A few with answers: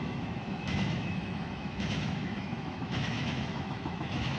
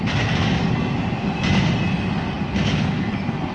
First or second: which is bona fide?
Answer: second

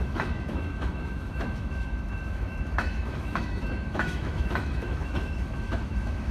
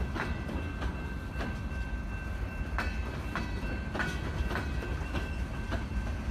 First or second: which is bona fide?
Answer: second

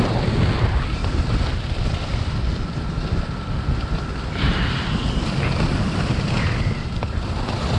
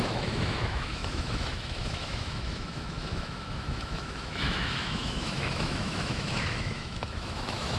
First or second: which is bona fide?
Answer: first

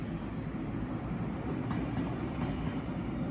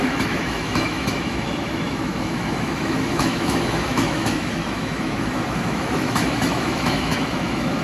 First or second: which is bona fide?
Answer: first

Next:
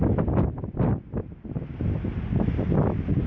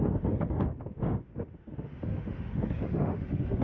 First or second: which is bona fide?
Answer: first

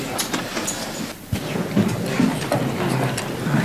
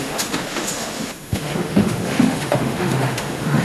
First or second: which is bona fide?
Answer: first